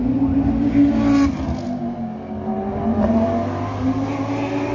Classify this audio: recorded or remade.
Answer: recorded